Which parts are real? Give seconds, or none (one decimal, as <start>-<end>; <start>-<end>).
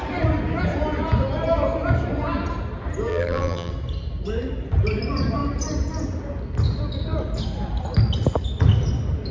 0.0-3.1; 3.7-9.3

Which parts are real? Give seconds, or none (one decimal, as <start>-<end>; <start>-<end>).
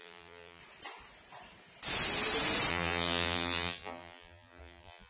0.6-2.7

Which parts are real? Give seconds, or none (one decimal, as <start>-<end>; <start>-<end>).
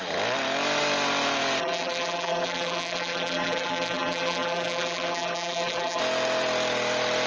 0.0-1.6; 6.0-7.3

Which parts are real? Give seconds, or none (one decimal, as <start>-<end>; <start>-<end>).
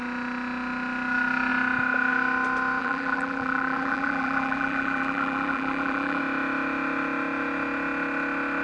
0.0-2.8; 6.2-8.6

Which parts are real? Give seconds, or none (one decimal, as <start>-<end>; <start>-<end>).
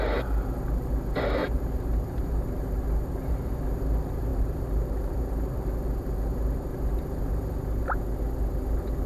0.0-1.4; 3.3-4.3; 5.6-6.7; 7.3-9.1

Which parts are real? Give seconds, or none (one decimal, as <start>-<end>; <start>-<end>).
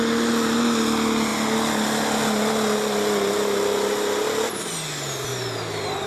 0.0-6.1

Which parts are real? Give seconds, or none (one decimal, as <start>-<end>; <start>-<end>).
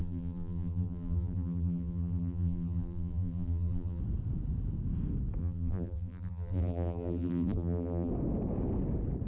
4.0-5.4; 8.1-9.3